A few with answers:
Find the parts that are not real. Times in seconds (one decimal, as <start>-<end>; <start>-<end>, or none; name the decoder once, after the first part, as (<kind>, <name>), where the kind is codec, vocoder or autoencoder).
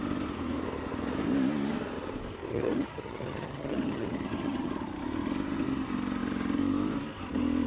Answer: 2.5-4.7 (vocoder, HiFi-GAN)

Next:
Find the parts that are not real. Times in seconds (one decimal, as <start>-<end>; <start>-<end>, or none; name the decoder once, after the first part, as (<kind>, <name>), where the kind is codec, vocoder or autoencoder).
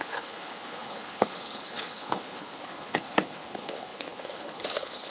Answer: 0.0-5.1 (codec, HILCodec)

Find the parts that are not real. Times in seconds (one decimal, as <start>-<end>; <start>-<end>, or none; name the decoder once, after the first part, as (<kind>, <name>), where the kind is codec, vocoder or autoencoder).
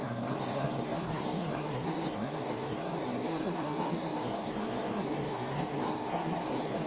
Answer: 0.0-6.9 (codec, SNAC)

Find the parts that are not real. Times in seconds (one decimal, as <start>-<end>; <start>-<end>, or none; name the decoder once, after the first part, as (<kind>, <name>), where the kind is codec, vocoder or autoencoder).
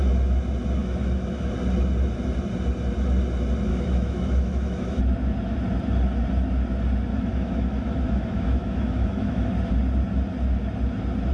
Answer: 0.8-1.5 (autoencoder, DAC-VAE); 3.7-5.0; 7.1-9.5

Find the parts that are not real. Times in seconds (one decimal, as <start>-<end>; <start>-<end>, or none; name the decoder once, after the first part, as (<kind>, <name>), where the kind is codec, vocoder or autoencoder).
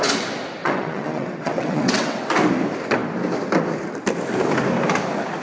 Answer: 0.6-2.2 (vocoder, WaveNeXt)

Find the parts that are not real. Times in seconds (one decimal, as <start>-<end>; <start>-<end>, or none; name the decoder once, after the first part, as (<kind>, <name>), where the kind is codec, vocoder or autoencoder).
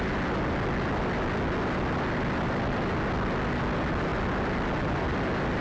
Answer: none